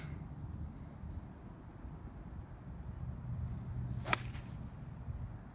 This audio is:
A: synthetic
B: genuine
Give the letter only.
B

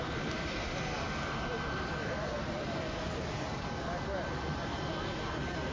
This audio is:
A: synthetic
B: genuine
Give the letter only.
B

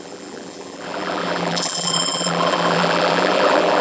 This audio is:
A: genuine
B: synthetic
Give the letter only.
B